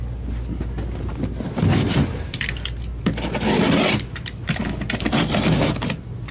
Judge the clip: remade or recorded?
recorded